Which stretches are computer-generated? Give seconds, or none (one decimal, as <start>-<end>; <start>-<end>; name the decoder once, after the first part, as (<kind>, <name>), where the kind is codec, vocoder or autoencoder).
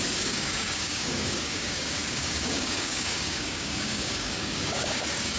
0.0-5.4 (codec, DAC)